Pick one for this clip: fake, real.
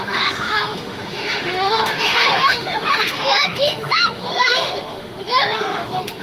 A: fake